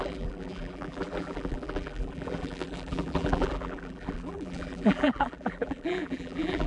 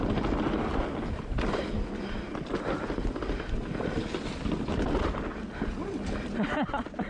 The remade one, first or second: first